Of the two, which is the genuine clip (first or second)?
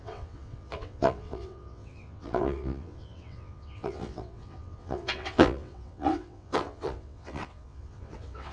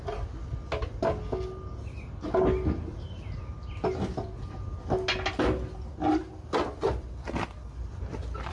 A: second